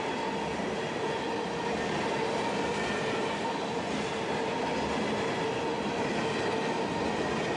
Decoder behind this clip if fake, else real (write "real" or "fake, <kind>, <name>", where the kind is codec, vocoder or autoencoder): real